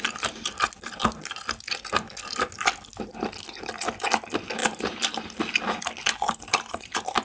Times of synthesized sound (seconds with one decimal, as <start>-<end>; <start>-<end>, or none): 4.6-5.4; 6.0-7.2